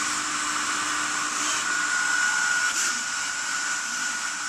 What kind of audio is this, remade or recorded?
recorded